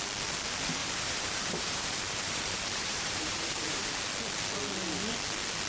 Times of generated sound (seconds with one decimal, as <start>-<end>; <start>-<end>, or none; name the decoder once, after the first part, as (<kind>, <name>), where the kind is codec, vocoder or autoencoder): 0.8-3.8 (vocoder, BigVGAN v2)

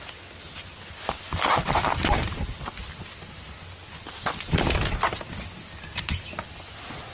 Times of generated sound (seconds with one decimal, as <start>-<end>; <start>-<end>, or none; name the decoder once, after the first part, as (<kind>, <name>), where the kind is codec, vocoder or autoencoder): 1.3-4.7 (vocoder, BigVGAN v2)

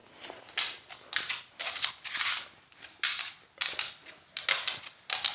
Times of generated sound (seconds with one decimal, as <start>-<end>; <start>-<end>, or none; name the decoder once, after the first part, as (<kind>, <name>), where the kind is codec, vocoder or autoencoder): 0.0-1.9 (vocoder, BigVGAN v2)

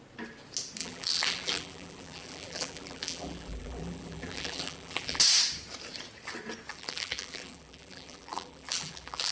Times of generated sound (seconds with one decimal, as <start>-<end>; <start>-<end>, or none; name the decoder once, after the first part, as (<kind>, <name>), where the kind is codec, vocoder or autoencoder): 0.8-5.2 (vocoder, BigVGAN v2); 6.7-9.3

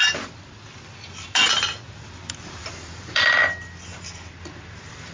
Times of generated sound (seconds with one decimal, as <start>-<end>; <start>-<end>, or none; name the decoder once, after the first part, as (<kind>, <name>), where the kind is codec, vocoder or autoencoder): 0.0-3.4 (vocoder, BigVGAN v2); 4.4-5.1

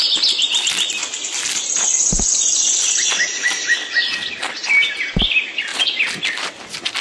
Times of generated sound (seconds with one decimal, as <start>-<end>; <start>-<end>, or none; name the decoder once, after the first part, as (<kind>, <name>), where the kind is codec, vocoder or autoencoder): 5.7-7.0 (vocoder, BigVGAN v2)

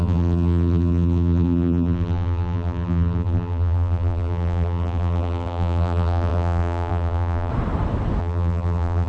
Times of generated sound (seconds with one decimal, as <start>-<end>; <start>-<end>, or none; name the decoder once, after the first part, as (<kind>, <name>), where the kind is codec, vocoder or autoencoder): 0.0-7.5 (vocoder, BigVGAN v2); 8.2-9.1

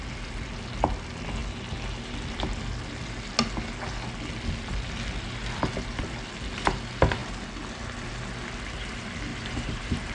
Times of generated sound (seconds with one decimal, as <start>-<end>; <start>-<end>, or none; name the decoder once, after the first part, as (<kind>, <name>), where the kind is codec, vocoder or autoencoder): 9.3-10.1 (vocoder, BigVGAN v2)